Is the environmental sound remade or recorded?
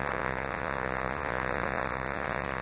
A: remade